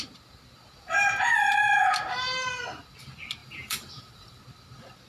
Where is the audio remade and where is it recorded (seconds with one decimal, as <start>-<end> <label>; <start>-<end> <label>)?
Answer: 0.0-3.4 recorded; 3.4-4.4 remade; 4.4-5.1 recorded